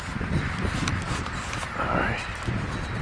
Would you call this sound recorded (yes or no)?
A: yes